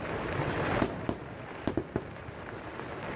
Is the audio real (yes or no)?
no